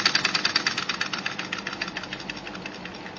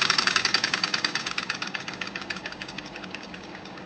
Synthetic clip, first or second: second